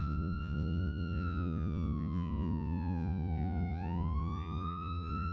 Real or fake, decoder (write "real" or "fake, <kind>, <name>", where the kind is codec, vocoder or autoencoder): fake, vocoder, Vocos